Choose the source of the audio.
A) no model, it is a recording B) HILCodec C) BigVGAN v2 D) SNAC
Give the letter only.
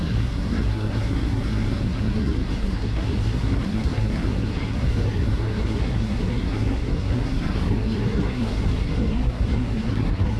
D